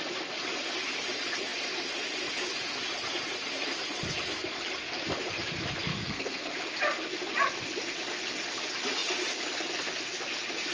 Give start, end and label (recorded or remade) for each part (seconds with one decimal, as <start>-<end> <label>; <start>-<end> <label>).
0.0-5.9 recorded; 5.9-6.5 remade; 6.5-10.7 recorded